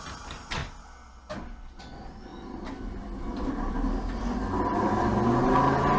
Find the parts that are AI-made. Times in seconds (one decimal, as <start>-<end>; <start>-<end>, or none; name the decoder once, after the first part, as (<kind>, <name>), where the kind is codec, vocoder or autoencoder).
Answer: none